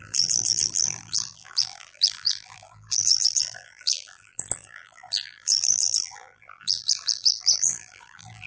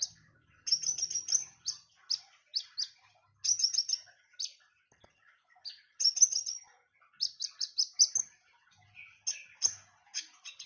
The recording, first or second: second